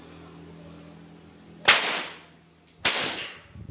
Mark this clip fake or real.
real